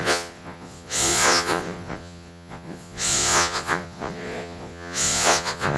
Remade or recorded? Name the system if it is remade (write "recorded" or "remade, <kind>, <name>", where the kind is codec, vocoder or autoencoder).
remade, vocoder, Vocos